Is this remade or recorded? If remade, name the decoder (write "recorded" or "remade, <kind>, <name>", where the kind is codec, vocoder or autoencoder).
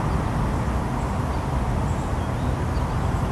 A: recorded